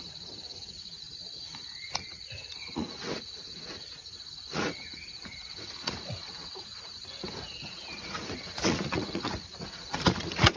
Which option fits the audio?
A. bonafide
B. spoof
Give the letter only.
B